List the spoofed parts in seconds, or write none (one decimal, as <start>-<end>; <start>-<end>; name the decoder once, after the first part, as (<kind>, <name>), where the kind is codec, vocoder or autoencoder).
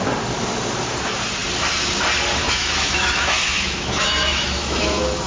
2.4-5.3 (autoencoder, DAC-VAE)